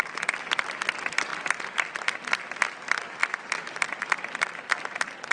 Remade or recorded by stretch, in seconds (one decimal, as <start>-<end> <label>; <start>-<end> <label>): 0.0-5.3 recorded